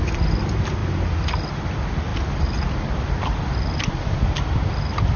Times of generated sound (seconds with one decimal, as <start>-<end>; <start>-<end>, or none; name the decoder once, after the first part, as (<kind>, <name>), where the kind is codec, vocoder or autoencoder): none